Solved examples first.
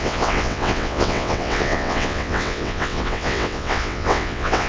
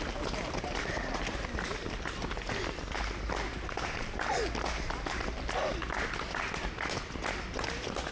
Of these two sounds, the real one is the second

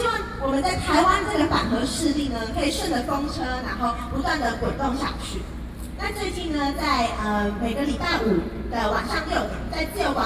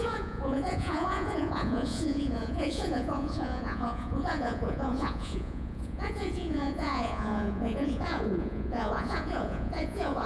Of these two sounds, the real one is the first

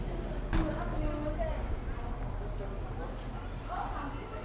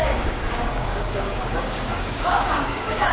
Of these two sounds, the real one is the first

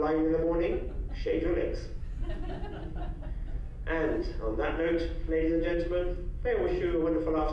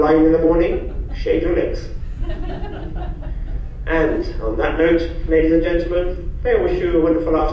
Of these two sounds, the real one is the first